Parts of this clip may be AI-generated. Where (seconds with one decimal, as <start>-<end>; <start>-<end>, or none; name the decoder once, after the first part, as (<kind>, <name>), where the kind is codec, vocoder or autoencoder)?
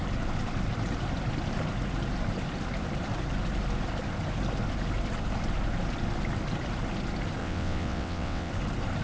7.4-8.5 (vocoder, WaveNeXt)